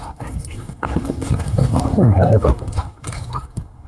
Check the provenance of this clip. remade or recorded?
remade